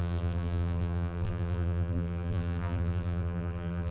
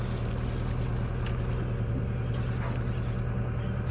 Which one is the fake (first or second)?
first